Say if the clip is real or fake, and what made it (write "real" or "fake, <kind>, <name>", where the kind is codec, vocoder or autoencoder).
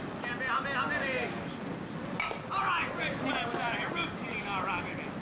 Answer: real